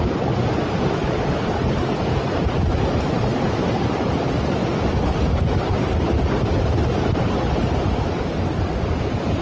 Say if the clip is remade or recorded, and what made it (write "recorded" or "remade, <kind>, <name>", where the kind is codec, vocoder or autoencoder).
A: recorded